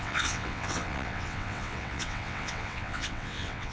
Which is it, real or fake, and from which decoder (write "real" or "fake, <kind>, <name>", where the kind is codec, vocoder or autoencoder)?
fake, vocoder, WaveNeXt